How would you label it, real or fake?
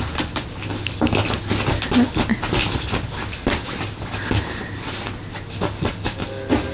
real